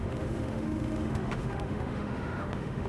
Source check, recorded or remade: remade